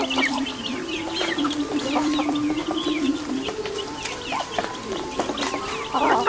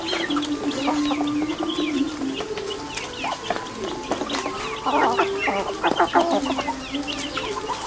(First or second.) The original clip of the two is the second